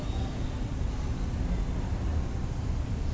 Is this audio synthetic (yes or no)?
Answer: no